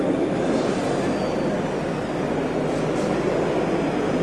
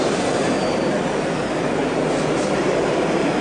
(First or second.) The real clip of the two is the first